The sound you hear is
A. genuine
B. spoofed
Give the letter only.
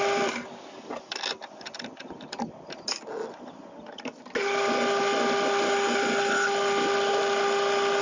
A